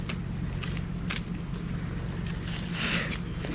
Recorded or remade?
recorded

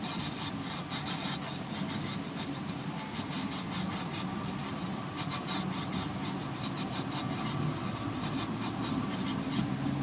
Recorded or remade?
recorded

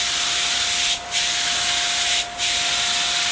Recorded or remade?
recorded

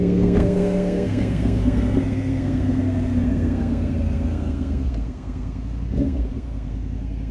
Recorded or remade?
remade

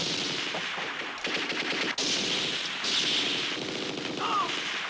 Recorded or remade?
recorded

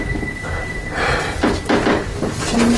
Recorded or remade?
recorded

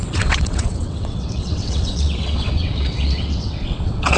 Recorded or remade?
remade